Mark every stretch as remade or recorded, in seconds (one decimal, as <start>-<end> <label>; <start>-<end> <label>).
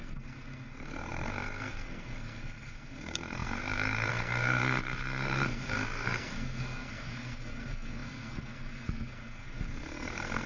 0.0-10.5 remade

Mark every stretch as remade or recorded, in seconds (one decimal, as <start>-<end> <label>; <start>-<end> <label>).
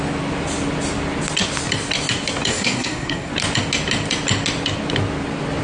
0.0-2.5 recorded; 2.5-3.3 remade; 3.3-5.6 recorded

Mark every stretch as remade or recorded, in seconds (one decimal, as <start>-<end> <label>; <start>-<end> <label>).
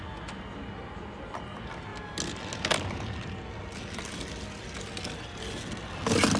0.0-6.4 recorded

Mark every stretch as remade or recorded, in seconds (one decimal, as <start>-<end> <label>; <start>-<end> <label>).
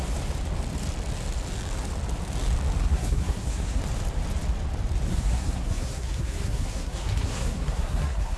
0.0-2.8 recorded; 2.8-3.8 remade; 3.8-5.1 recorded; 5.1-8.4 remade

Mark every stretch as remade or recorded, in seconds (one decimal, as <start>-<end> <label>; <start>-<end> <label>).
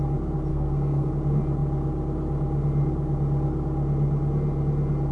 0.0-0.5 recorded; 0.5-1.1 remade; 1.1-5.1 recorded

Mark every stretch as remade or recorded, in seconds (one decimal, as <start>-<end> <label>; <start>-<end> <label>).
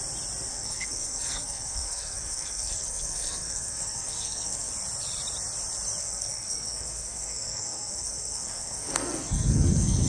0.0-0.5 recorded; 0.5-4.7 remade; 4.7-6.0 recorded; 6.0-10.1 remade